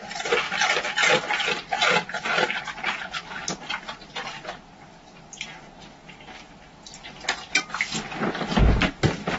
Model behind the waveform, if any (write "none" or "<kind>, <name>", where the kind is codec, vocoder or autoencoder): none